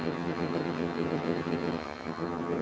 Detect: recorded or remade remade